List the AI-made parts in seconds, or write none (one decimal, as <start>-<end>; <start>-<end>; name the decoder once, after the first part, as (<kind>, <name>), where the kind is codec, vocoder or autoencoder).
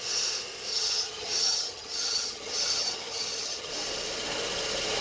0.7-3.7 (vocoder, HiFi-GAN)